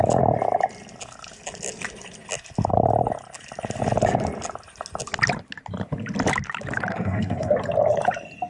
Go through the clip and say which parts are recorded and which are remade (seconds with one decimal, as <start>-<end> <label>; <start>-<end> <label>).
0.0-6.9 recorded; 6.9-7.5 remade; 7.5-8.5 recorded